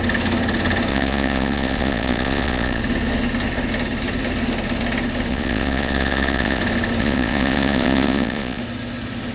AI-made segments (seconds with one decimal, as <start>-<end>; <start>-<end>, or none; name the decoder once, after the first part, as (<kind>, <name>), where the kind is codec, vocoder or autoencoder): 0.9-2.8 (vocoder, Vocos); 5.3-6.6; 7.0-8.6